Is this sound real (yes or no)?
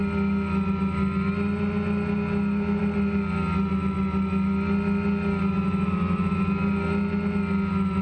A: yes